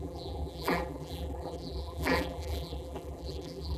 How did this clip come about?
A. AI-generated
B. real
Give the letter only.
A